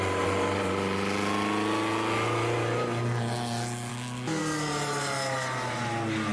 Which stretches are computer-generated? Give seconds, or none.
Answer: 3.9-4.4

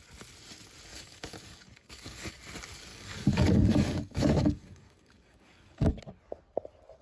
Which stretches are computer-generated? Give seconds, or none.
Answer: 0.9-2.4; 2.9-5.9